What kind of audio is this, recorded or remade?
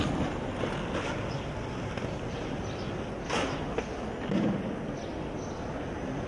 recorded